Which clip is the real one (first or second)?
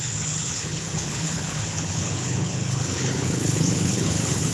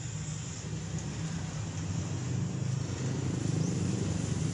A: second